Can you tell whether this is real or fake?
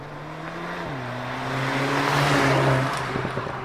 real